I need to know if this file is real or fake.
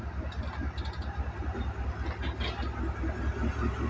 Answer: real